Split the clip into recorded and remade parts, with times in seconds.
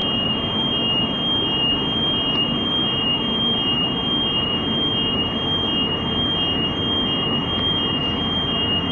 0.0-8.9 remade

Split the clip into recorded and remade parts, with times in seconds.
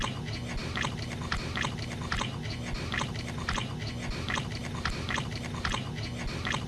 0.0-6.7 recorded